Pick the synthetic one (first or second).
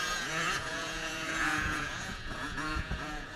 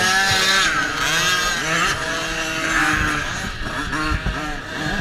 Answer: first